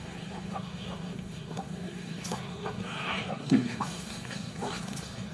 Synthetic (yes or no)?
yes